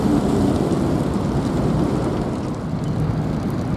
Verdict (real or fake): real